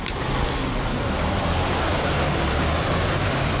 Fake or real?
real